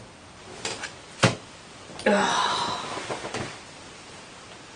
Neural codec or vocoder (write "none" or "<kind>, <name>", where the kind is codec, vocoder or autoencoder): none